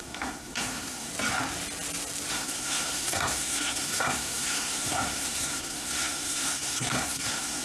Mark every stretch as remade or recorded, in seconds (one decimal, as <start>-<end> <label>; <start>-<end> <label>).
0.0-1.1 remade; 1.1-2.3 recorded; 2.3-7.6 remade